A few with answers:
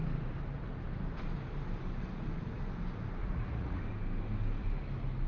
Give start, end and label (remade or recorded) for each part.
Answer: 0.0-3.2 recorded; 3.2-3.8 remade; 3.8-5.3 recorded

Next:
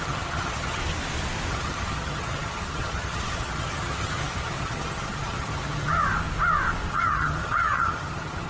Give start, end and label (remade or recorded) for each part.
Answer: 0.0-0.8 remade; 0.8-1.5 recorded; 1.5-5.9 remade; 5.9-6.9 recorded; 6.9-8.5 remade

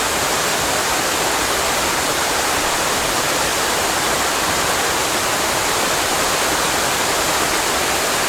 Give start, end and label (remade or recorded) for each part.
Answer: 0.0-8.3 remade

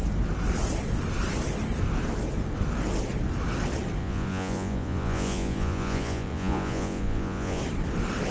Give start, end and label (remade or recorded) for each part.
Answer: 0.0-4.0 recorded; 4.0-7.6 remade; 7.6-8.3 recorded

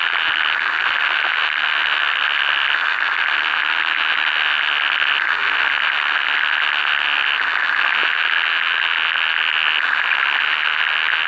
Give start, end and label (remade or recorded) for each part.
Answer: 0.0-11.3 recorded

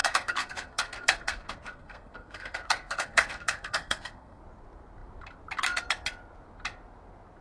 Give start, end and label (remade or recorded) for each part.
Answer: 0.0-4.4 remade; 4.4-7.4 recorded

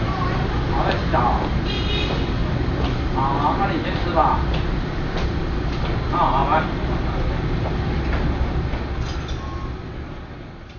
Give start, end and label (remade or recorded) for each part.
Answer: 0.0-2.4 recorded; 2.4-2.9 remade; 2.9-4.2 recorded; 4.2-5.4 remade; 5.4-6.4 recorded; 6.4-8.2 remade; 8.2-10.8 recorded